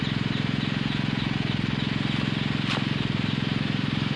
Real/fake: real